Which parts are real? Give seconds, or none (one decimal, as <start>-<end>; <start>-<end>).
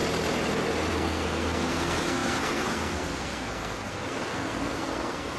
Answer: 0.0-0.9